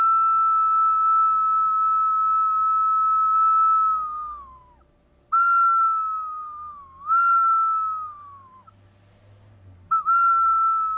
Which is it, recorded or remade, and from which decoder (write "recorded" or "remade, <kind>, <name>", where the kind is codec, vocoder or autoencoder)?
recorded